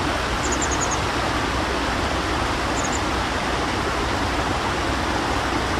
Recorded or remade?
recorded